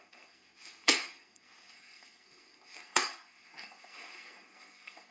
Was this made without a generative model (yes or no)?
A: no